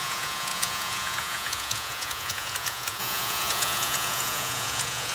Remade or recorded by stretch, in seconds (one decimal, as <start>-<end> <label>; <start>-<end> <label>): 0.0-5.1 remade